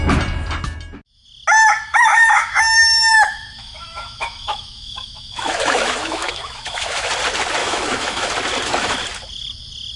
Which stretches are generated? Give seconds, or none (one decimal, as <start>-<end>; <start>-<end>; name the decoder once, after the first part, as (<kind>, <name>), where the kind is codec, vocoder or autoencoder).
1.9-7.1 (autoencoder, DAC-VAE); 7.6-8.3